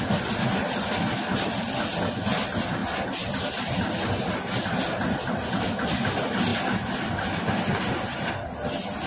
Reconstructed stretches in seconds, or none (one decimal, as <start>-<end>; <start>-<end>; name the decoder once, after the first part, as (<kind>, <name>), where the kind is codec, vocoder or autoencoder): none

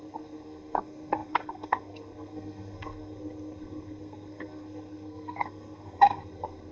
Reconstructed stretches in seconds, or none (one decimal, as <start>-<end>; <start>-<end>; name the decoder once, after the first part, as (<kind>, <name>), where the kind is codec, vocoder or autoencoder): 0.0-6.7 (codec, SNAC)

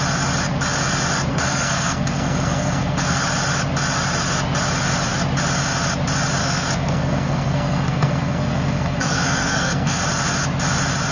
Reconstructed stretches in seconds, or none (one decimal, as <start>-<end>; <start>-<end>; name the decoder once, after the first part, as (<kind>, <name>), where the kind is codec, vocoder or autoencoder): 1.3-3.2 (codec, SNAC); 6.4-10.0